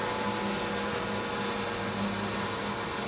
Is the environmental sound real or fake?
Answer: real